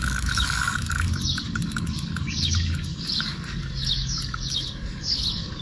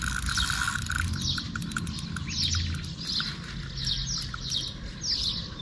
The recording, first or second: second